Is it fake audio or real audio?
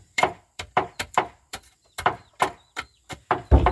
fake